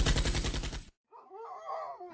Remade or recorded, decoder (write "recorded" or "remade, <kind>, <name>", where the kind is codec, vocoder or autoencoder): recorded